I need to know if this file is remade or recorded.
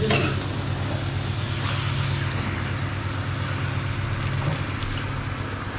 recorded